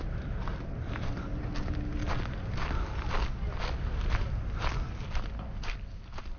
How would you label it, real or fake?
real